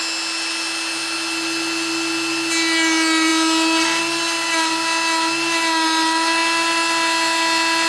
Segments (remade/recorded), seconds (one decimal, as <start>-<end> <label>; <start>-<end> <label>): 0.0-7.9 recorded